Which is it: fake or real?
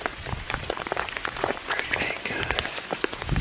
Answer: fake